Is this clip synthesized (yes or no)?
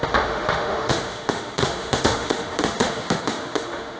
yes